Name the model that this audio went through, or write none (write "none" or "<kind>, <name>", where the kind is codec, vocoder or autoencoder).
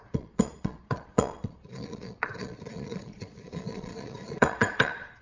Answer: vocoder, Vocos